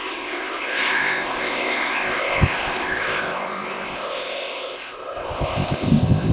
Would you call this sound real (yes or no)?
no